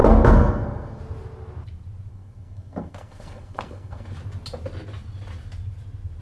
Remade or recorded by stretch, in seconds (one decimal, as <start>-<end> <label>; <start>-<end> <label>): 0.0-1.0 remade; 1.0-2.1 recorded; 2.1-4.1 remade; 4.1-6.2 recorded